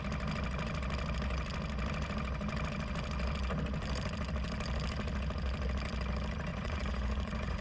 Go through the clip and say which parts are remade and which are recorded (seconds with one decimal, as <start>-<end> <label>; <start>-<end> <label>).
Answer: 0.0-6.5 recorded; 6.5-7.6 remade